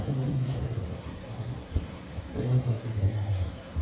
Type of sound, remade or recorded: remade